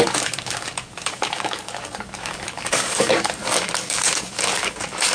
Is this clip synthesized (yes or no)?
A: yes